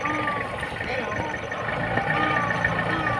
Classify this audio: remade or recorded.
recorded